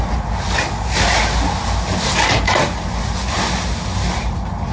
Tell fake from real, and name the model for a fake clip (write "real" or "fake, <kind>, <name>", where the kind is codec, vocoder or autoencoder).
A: real